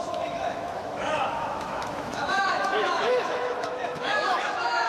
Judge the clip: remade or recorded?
remade